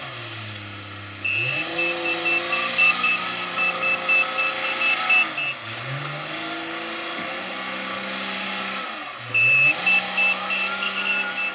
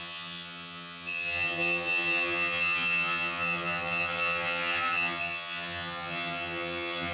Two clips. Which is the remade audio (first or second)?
second